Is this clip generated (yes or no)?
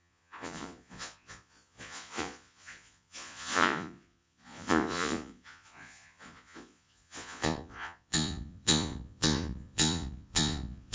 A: yes